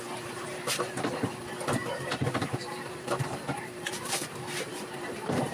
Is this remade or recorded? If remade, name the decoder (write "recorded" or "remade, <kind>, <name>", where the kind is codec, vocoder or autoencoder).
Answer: remade, vocoder, BigVGAN v2